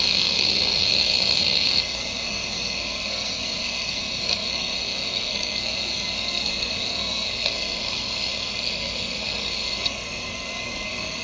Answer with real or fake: fake